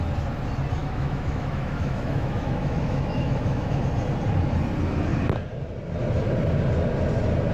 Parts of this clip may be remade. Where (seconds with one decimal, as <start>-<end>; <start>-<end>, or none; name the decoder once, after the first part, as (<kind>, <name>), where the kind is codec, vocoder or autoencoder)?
0.8-3.8 (autoencoder, DAC-VAE)